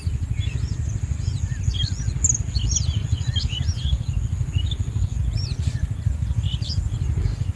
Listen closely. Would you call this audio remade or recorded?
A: recorded